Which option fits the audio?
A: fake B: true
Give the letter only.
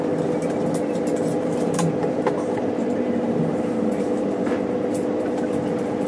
A